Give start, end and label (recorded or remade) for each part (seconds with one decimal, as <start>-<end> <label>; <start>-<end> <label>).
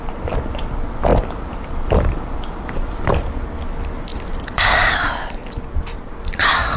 0.0-1.1 recorded; 1.1-3.1 remade; 3.1-4.1 recorded; 4.1-4.8 remade; 4.8-6.8 recorded